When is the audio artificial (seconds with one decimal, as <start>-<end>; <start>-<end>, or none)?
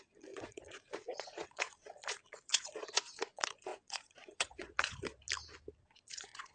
0.0-5.2; 5.8-6.5